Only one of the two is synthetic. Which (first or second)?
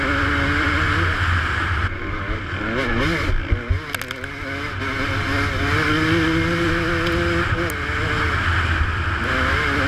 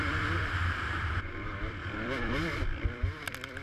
second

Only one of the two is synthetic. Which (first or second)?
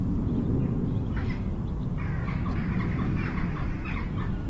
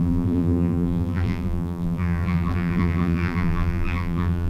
second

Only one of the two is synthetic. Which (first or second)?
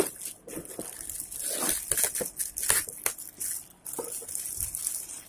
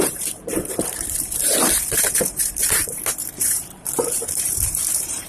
second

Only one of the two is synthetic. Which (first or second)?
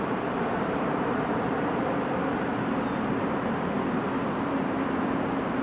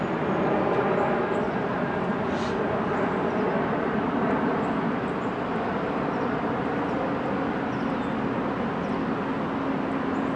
first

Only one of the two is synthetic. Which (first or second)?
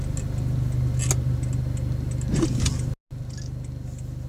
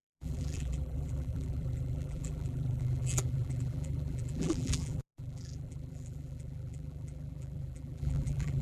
second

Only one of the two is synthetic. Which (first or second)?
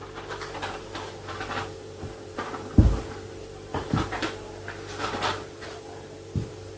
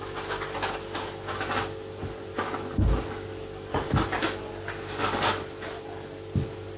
first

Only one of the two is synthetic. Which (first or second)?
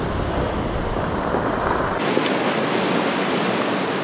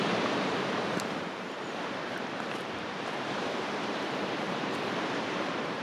second